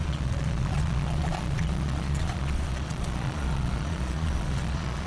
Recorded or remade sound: remade